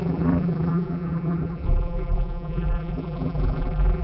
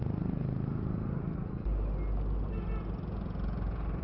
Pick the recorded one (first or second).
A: second